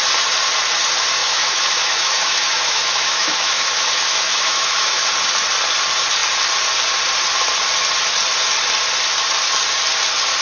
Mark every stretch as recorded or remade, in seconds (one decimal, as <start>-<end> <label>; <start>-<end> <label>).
0.0-1.2 recorded; 1.2-5.1 remade; 5.1-10.4 recorded